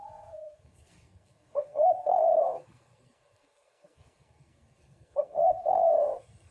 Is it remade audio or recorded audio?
remade